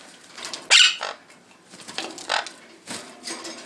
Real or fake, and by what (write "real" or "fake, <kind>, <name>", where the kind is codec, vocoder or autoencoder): real